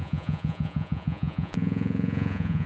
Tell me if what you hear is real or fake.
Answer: fake